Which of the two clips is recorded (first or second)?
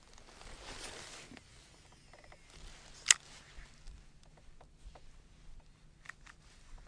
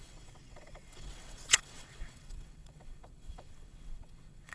first